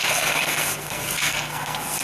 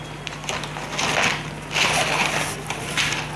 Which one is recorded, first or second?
second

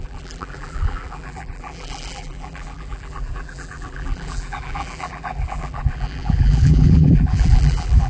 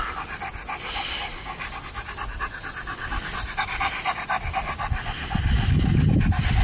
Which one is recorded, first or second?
second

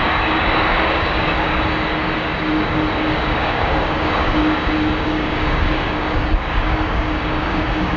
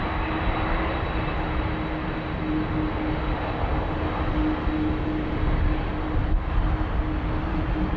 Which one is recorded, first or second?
second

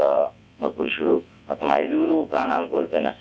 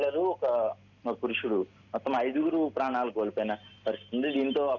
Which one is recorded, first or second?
second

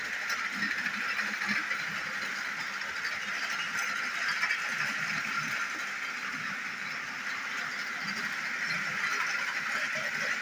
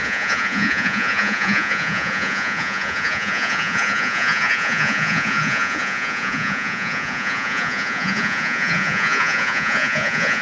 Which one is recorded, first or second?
first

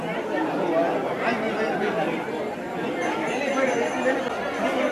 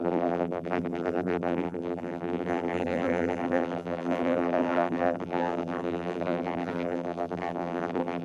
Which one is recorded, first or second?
first